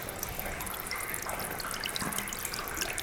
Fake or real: real